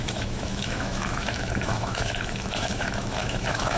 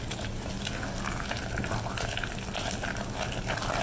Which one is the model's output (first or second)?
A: first